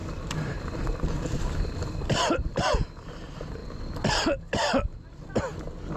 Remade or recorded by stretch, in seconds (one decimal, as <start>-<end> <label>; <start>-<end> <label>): 0.0-6.0 recorded